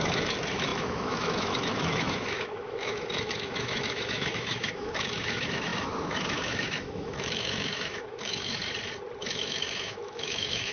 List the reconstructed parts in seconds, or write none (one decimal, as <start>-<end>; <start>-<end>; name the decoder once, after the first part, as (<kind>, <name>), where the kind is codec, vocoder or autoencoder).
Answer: 0.0-8.6 (autoencoder, DAC-VAE); 9.2-10.7